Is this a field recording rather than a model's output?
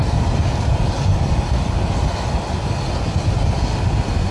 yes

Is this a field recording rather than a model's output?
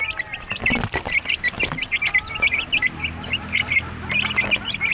yes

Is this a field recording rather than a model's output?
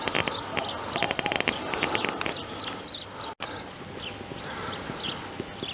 yes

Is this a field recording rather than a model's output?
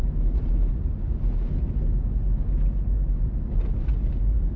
yes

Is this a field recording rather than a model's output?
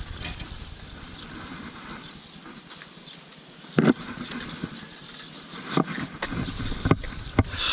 yes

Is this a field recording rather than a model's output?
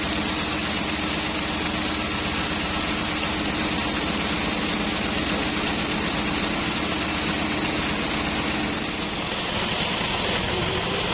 yes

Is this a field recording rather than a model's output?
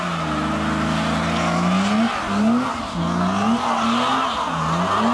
yes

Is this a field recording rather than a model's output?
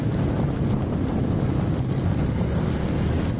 yes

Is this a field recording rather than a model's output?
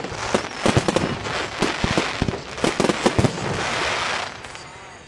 yes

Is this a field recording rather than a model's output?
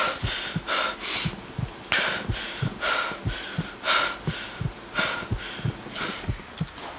yes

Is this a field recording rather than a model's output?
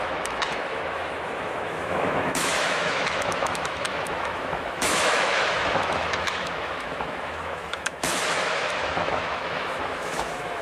no